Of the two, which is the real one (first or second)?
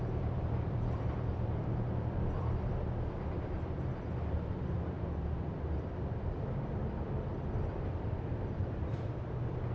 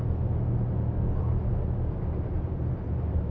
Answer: second